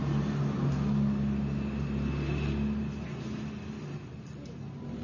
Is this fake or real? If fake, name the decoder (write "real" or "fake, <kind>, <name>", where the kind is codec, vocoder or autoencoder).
real